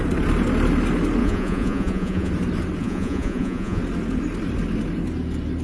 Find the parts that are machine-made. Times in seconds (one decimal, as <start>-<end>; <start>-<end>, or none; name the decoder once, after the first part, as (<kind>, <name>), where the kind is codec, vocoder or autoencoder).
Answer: 1.2-2.3 (vocoder, Vocos); 2.8-3.8